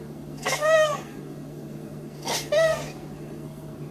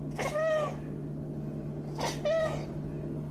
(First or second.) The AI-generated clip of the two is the first